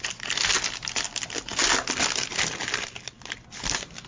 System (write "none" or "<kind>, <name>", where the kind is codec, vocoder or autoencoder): none